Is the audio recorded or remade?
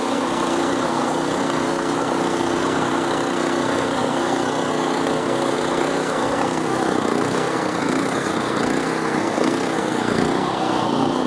remade